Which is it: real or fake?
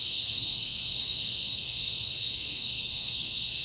fake